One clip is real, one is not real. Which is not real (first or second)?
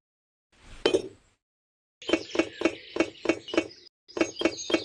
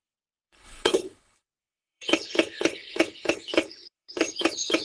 second